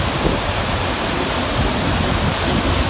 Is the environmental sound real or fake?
real